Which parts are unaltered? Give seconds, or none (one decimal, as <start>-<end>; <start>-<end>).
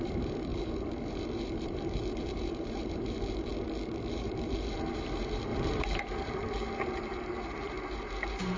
3.5-4.1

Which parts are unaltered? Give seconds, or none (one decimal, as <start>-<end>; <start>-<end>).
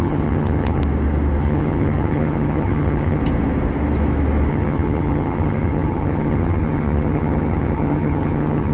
0.8-1.4; 3.2-4.5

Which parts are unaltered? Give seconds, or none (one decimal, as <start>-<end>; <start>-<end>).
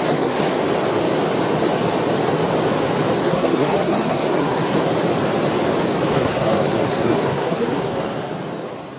0.6-3.2; 4.9-6.1; 8.4-9.0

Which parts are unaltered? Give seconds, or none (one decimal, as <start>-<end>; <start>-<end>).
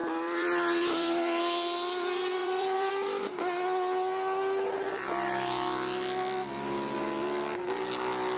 1.4-2.4; 2.9-8.4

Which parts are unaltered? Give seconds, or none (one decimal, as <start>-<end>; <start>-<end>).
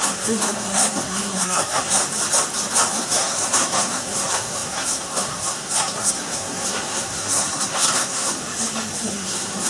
2.0-2.9; 8.4-9.0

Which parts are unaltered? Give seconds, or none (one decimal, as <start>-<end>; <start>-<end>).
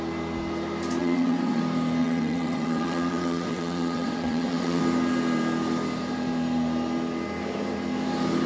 0.0-1.0; 1.6-2.0; 4.8-8.5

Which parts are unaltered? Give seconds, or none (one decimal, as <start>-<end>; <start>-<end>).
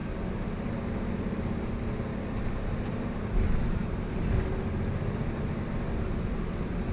none